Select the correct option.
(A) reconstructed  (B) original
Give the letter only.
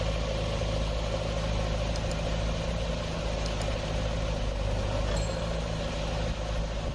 B